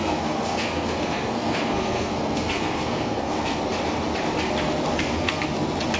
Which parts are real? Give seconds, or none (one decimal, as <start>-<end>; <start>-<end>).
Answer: 3.6-4.9; 5.4-6.0